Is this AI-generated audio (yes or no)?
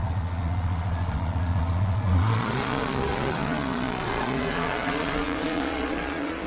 yes